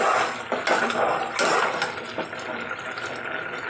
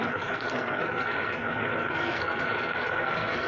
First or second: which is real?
first